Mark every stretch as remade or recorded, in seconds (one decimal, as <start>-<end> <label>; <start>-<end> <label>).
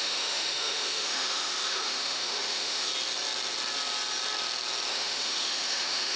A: 0.0-2.9 remade; 2.9-4.9 recorded; 4.9-6.2 remade